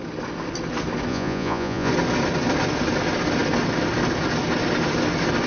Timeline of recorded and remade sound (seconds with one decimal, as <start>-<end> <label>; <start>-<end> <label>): 0.0-1.1 recorded; 1.1-1.9 remade; 1.9-5.5 recorded